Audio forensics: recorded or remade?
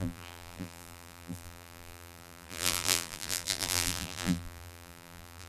remade